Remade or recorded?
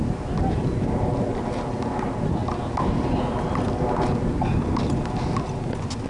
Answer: recorded